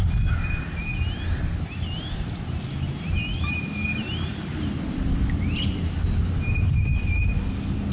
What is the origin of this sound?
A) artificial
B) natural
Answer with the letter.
B